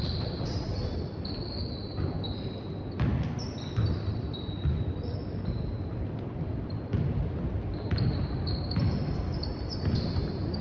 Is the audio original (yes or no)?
no